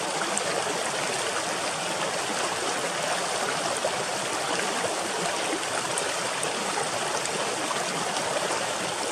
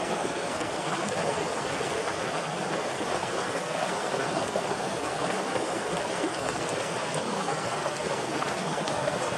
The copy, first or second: second